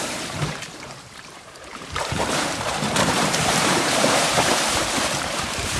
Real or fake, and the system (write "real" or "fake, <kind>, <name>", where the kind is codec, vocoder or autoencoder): fake, vocoder, BigVGAN v2